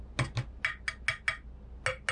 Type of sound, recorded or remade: recorded